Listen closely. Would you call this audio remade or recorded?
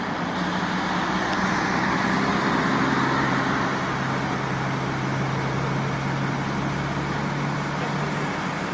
recorded